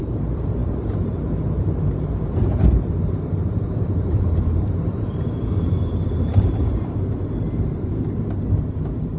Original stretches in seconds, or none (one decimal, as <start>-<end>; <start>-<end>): none